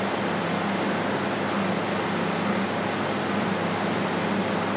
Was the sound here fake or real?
real